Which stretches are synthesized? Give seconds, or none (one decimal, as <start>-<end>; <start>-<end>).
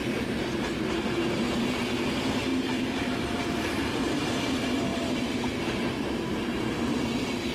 2.5-3.4; 4.9-5.6